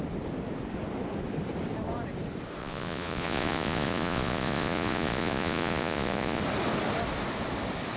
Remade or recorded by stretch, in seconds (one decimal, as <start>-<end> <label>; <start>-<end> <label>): 0.0-2.6 recorded; 2.6-6.4 remade; 6.4-8.0 recorded